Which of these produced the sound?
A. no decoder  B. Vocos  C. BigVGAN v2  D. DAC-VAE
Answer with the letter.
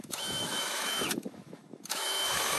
D